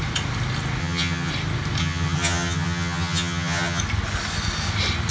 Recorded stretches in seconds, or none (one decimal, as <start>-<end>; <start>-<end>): 0.0-0.8; 1.3-1.8; 3.8-5.1